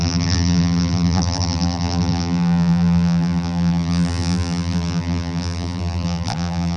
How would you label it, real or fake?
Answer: fake